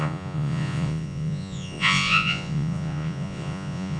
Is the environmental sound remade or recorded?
remade